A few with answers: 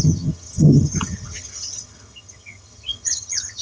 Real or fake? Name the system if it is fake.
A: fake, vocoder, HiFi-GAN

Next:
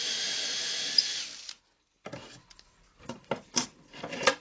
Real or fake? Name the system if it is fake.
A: real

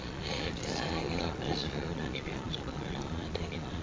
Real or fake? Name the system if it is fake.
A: fake, vocoder, Vocos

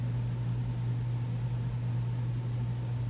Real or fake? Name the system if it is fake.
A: real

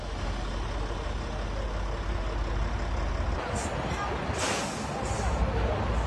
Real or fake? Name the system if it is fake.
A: real